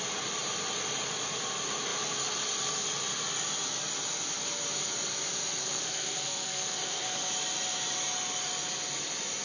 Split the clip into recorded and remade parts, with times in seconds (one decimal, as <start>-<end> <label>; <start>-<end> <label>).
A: 0.0-5.6 recorded; 5.6-7.3 remade; 7.3-9.4 recorded